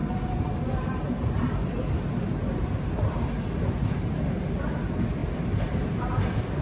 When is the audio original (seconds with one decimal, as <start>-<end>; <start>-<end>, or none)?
0.0-5.2; 6.0-6.6